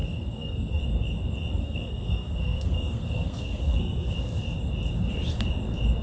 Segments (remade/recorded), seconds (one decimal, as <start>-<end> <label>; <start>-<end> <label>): 0.0-0.8 remade; 0.8-1.6 recorded; 1.6-4.1 remade; 4.1-6.0 recorded